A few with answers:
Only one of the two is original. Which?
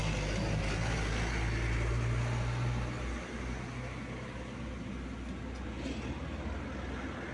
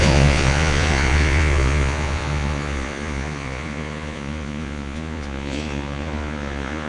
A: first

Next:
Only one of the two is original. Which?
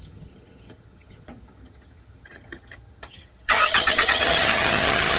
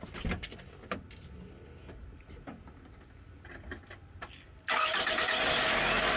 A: second